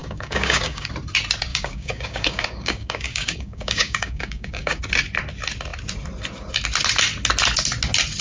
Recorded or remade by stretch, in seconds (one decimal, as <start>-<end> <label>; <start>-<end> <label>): 0.0-0.9 remade; 0.9-1.5 recorded; 1.5-4.8 remade; 4.8-8.2 recorded